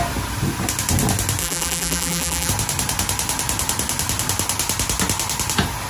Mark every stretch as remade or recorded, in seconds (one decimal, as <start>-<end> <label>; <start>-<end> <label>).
0.0-1.4 recorded; 1.4-2.5 remade; 2.5-5.9 recorded